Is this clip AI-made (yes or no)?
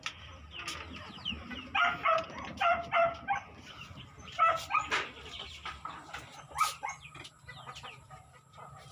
no